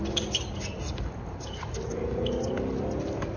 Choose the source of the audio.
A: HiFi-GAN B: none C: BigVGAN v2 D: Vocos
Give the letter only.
B